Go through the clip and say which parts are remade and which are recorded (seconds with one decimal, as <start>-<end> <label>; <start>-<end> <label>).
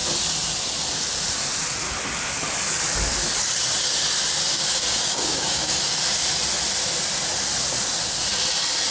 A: 0.0-4.5 recorded; 4.5-5.8 remade; 5.8-8.9 recorded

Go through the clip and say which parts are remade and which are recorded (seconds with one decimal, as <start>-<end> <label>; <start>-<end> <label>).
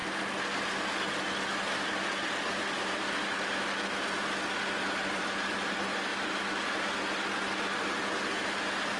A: 0.0-9.0 recorded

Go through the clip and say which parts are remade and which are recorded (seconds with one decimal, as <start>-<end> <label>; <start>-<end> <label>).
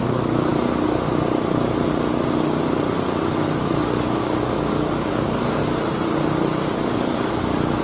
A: 0.0-0.5 remade; 0.5-3.2 recorded; 3.2-5.6 remade; 5.6-6.3 recorded; 6.3-7.8 remade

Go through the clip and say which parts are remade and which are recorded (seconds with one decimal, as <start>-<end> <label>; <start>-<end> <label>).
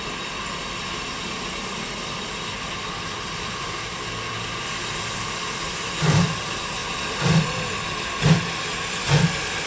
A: 0.0-9.7 recorded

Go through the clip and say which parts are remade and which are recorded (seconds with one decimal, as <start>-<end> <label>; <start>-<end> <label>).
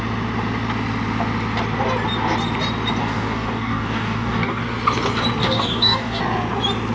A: 0.0-3.0 recorded; 3.0-4.6 remade; 4.6-5.4 recorded; 5.4-6.2 remade; 6.2-6.9 recorded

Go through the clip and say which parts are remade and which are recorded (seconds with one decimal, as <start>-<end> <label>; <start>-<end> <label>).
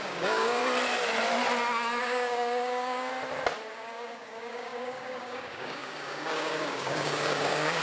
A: 0.0-0.6 remade; 0.6-2.0 recorded; 2.0-3.1 remade; 3.1-3.7 recorded; 3.7-7.8 remade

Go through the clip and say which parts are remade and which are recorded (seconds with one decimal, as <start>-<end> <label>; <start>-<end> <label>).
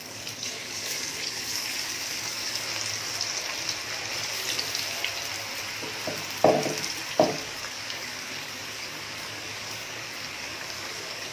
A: 0.0-2.7 remade; 2.7-7.1 recorded; 7.1-11.3 remade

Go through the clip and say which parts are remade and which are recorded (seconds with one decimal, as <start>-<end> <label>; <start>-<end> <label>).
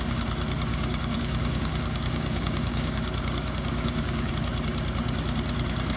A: 0.0-0.7 recorded; 0.7-4.3 remade; 4.3-6.0 recorded